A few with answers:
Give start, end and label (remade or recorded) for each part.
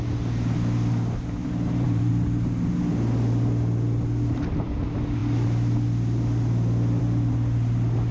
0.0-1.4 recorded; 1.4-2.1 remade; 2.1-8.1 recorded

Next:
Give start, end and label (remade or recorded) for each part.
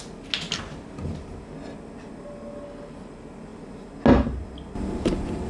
0.0-5.5 recorded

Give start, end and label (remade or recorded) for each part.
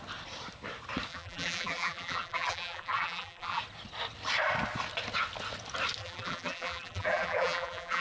0.0-1.1 recorded; 1.1-3.6 remade; 3.6-6.0 recorded; 6.0-8.0 remade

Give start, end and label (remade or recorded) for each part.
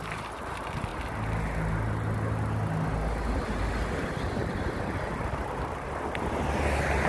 0.0-7.1 recorded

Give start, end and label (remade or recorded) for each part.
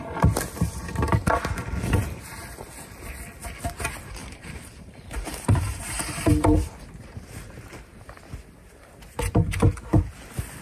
0.0-4.2 recorded; 4.2-6.7 remade; 6.7-10.6 recorded